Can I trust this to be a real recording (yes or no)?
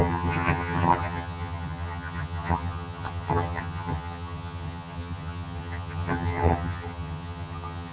no